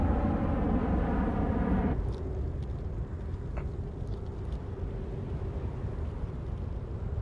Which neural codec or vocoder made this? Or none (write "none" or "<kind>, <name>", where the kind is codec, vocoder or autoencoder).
none